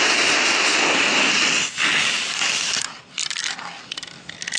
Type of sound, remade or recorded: recorded